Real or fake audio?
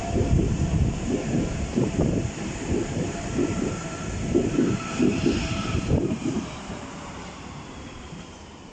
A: fake